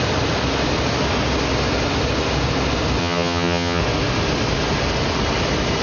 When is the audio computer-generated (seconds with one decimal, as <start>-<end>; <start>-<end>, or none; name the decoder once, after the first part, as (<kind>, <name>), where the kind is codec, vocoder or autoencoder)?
3.0-3.8 (vocoder, HiFi-GAN)